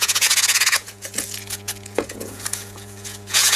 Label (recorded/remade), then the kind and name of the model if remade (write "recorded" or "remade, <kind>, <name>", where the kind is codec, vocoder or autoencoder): remade, vocoder, Vocos